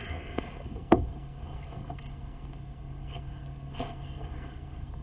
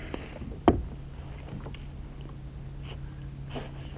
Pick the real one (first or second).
second